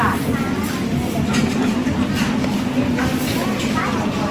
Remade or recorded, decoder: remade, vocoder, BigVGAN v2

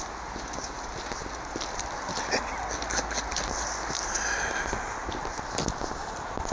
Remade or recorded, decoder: recorded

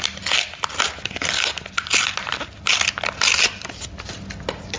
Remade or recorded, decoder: recorded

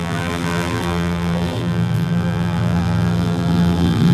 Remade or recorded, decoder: remade, vocoder, BigVGAN v2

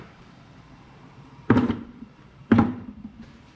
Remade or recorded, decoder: remade, vocoder, BigVGAN v2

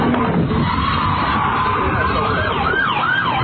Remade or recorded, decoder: remade, vocoder, BigVGAN v2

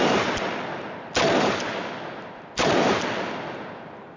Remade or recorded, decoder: recorded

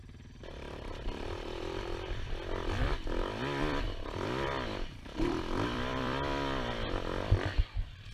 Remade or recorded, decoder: remade, vocoder, BigVGAN v2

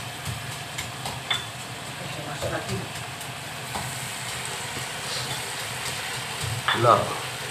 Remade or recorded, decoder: recorded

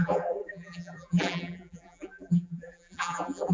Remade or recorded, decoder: remade, vocoder, BigVGAN v2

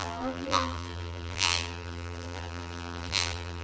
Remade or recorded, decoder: remade, vocoder, BigVGAN v2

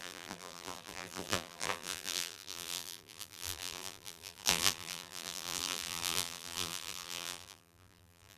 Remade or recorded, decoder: remade, vocoder, BigVGAN v2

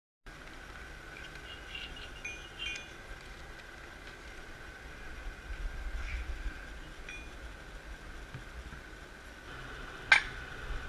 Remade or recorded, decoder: recorded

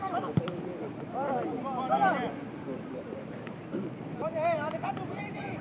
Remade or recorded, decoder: remade, vocoder, BigVGAN v2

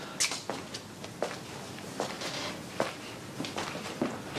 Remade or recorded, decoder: recorded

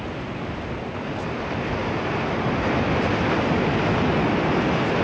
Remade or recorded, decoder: recorded